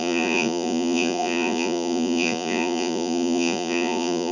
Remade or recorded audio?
remade